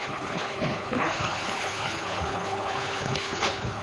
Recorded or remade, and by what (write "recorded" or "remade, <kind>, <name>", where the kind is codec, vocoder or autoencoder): remade, codec, HILCodec